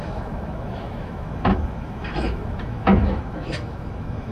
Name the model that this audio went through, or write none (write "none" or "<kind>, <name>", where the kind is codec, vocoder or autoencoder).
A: autoencoder, DAC-VAE